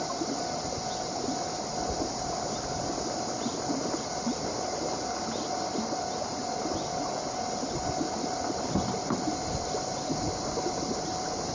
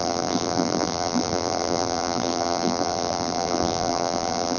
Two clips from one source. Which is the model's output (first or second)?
second